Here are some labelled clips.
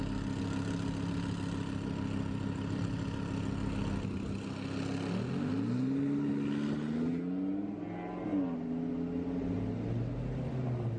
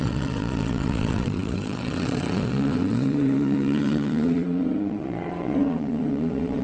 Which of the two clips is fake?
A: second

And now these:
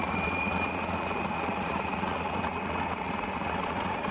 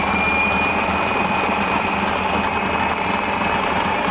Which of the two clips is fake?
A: first